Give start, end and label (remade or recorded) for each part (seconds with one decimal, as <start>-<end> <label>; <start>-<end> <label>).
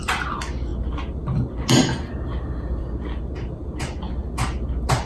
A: 0.0-5.1 recorded